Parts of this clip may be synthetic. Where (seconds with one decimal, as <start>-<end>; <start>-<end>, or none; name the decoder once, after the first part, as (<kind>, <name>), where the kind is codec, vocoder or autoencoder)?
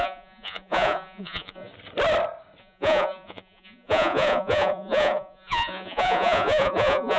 0.0-1.7 (vocoder, Vocos); 2.6-7.2